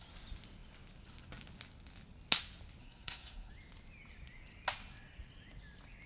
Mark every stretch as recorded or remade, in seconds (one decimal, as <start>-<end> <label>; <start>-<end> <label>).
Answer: 0.0-2.8 recorded; 2.8-3.5 remade; 3.5-6.1 recorded